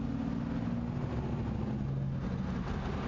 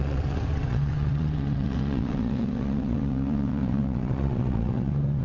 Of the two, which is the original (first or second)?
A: first